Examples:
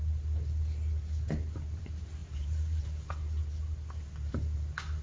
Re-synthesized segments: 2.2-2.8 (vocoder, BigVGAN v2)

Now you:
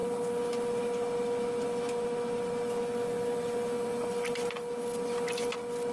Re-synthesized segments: none

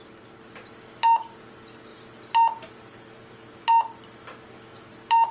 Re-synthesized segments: none

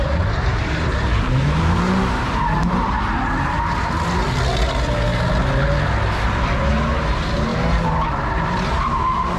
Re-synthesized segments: 0.5-3.9 (vocoder, BigVGAN v2); 7.5-8.5